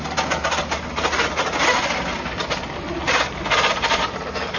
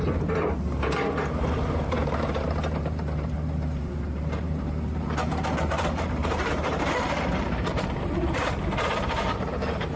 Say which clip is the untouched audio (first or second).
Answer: first